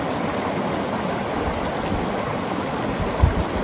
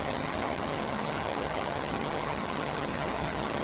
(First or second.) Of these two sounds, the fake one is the second